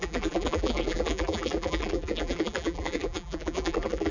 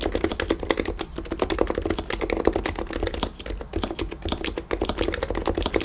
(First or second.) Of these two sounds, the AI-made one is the first